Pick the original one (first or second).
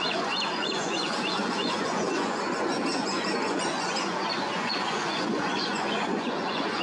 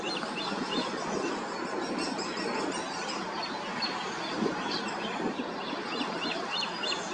second